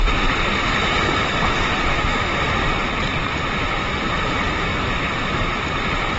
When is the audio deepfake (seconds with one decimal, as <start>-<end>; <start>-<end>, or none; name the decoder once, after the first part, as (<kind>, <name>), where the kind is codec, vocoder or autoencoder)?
0.0-6.2 (vocoder, BigVGAN v2)